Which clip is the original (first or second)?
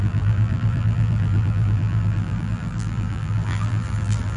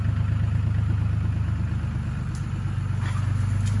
second